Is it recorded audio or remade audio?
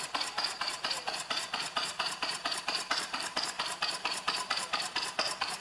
remade